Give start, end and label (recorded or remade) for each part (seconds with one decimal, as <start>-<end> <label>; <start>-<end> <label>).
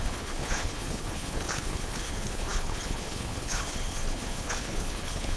0.0-5.4 remade